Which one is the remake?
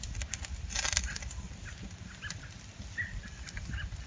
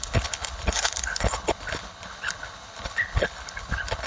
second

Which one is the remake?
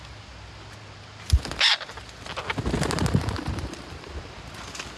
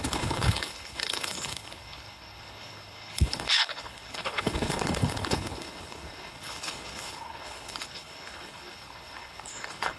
second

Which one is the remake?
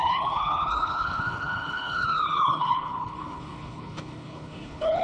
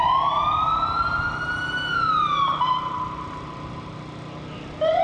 first